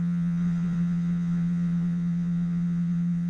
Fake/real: fake